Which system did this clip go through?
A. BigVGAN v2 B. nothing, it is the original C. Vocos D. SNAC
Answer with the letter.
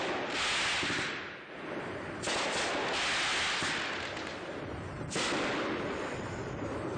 B